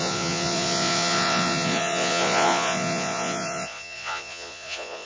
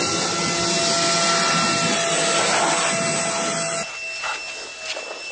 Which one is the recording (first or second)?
second